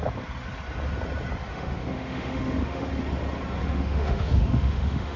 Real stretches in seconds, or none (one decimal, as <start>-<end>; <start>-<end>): 0.0-1.5; 2.9-3.6